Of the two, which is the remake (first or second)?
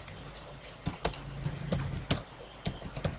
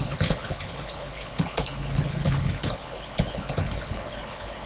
second